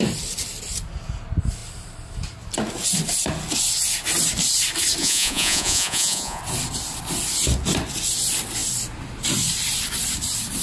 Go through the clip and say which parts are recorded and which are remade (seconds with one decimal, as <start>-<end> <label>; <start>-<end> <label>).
0.0-5.0 recorded; 5.0-6.4 remade; 6.4-10.6 recorded